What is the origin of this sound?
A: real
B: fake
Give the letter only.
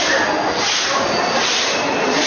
A